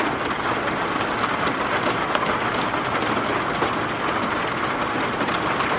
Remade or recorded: recorded